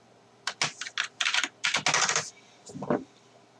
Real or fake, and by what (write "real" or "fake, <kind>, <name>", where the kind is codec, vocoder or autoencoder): real